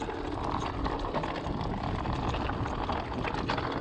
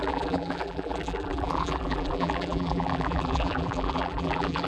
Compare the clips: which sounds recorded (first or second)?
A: first